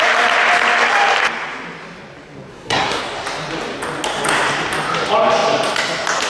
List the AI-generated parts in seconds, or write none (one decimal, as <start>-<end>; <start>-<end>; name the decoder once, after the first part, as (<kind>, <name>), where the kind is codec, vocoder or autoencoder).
2.5-3.0 (codec, SNAC)